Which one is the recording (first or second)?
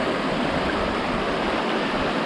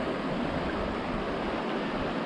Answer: second